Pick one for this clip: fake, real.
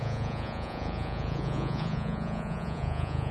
fake